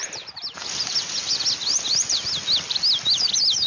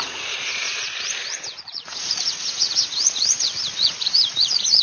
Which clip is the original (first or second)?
first